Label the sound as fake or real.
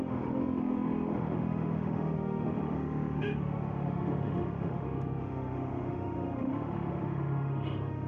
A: fake